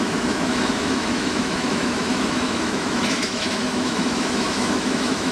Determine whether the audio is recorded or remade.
remade